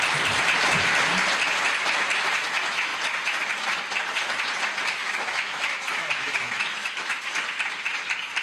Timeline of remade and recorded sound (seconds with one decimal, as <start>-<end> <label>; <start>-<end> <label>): 0.0-5.0 recorded; 5.0-7.4 remade; 7.4-8.4 recorded